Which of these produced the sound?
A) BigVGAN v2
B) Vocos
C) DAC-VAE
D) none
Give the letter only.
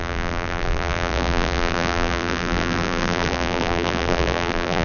A